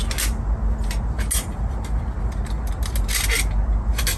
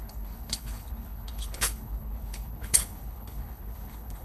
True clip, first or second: first